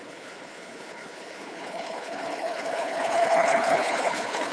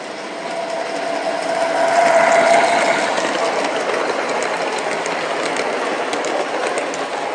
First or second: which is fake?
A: first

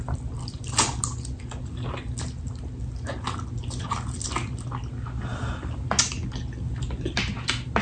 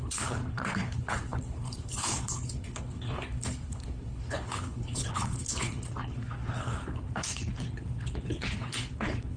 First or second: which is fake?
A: second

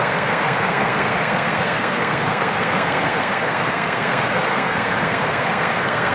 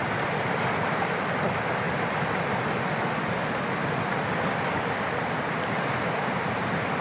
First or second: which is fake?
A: first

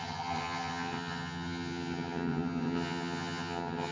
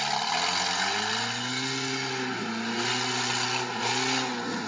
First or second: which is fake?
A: first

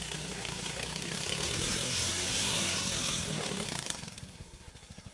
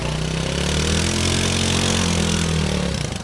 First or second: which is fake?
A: first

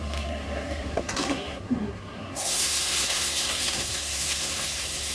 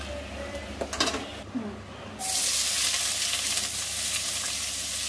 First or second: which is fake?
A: first